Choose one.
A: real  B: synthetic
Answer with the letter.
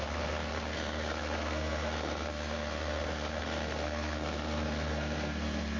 B